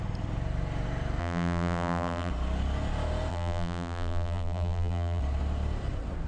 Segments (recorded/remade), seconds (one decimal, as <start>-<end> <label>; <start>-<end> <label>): 0.0-1.2 recorded; 1.2-2.3 remade; 2.3-3.3 recorded; 3.3-5.2 remade; 5.2-6.3 recorded